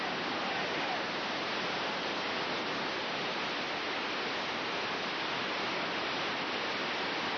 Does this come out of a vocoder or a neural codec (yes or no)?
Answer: no